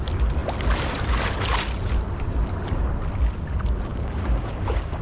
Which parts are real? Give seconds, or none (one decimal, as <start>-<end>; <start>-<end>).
0.0-3.9

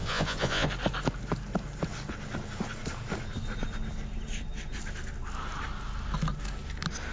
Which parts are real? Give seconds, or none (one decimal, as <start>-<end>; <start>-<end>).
0.7-7.1

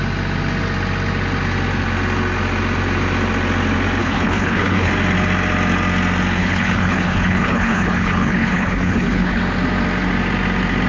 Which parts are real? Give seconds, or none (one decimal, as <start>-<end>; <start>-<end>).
0.0-4.0; 4.9-6.4; 9.4-10.9

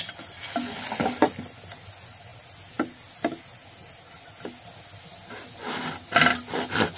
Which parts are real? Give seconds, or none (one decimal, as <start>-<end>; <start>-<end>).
0.0-7.0

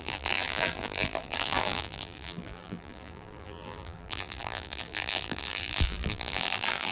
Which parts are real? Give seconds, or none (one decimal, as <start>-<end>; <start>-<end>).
none

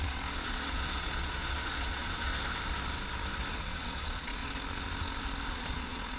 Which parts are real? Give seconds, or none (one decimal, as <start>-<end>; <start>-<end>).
2.3-3.5; 4.4-5.5